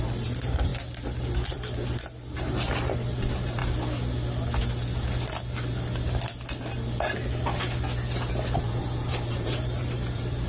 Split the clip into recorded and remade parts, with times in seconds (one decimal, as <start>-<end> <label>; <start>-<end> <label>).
0.0-0.7 remade; 0.7-2.6 recorded; 2.6-3.6 remade; 3.6-8.6 recorded; 8.6-10.5 remade